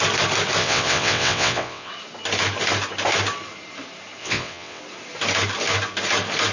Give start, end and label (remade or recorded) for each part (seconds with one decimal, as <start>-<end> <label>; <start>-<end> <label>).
0.0-0.6 recorded; 0.6-1.9 remade; 1.9-4.2 recorded; 4.2-4.8 remade; 4.8-6.5 recorded